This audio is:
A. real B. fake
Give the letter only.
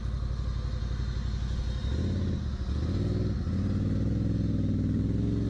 A